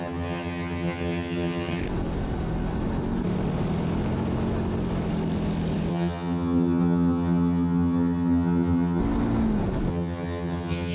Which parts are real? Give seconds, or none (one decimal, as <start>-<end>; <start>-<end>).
1.8-5.9; 9.0-9.9

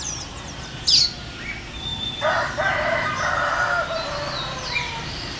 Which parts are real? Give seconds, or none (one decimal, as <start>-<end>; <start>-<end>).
0.0-5.4